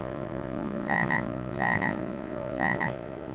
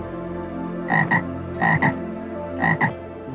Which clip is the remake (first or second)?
first